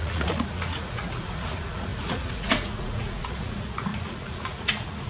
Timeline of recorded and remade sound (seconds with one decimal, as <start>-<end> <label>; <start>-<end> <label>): 0.0-5.1 remade